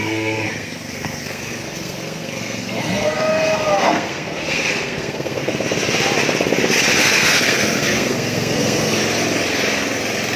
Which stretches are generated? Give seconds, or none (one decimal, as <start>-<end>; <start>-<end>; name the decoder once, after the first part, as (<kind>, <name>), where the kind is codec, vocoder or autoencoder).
0.0-5.5 (codec, SNAC); 7.0-9.0